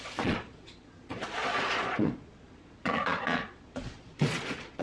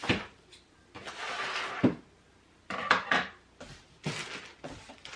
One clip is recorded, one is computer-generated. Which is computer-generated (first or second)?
first